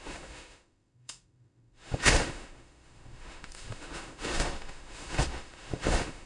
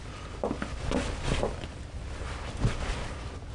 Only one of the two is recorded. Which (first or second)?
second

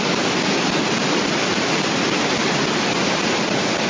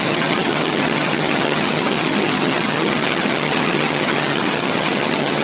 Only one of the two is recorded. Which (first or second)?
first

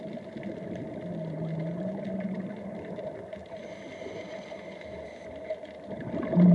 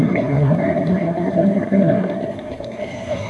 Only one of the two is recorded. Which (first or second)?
first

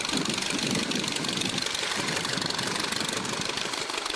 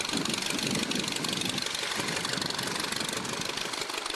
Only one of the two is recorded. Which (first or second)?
second